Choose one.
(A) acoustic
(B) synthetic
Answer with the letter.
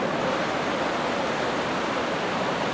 A